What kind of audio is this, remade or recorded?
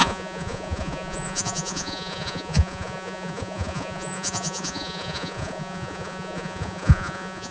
remade